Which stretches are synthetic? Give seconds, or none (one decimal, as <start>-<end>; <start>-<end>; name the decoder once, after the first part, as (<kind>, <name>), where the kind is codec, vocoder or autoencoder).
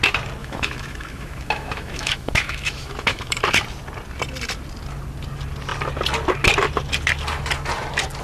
0.4-3.4 (autoencoder, DAC-VAE)